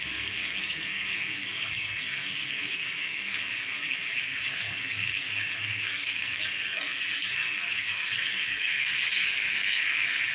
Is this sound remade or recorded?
remade